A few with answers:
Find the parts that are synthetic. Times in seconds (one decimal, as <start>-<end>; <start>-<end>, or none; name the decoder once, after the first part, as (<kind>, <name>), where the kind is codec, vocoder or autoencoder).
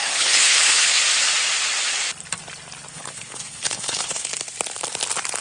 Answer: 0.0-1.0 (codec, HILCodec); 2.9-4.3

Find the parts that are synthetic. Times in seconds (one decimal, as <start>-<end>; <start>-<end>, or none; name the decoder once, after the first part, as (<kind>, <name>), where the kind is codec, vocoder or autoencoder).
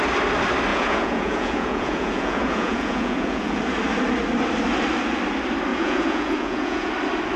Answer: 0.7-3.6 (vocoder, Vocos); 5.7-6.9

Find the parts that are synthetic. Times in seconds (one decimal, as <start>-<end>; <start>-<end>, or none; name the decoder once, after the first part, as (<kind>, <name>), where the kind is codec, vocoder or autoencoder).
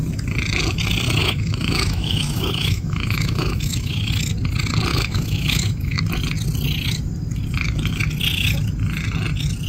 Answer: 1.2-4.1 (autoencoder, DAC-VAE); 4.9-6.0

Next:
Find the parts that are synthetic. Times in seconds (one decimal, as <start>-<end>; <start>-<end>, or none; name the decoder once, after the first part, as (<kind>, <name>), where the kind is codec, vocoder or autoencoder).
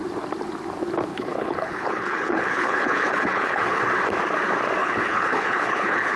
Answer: 1.1-3.8 (codec, HILCodec); 4.8-6.2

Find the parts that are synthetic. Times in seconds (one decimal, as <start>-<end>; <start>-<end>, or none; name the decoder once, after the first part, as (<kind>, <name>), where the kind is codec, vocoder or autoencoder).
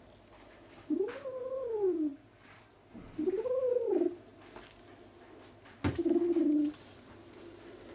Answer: none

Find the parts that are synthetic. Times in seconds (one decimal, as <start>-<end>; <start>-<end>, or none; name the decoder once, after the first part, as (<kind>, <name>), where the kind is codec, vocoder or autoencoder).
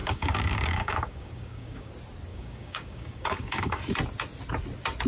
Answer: 0.0-1.9 (codec, DAC); 2.3-3.8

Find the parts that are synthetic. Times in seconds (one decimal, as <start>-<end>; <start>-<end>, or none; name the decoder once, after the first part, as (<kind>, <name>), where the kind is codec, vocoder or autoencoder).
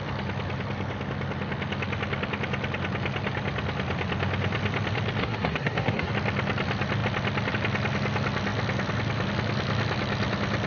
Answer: 5.2-6.1 (codec, SNAC)